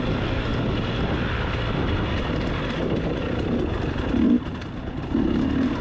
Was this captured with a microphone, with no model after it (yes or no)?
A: yes